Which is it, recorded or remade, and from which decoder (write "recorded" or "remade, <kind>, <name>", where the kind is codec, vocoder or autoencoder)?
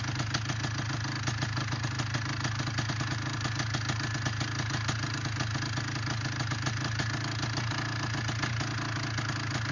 recorded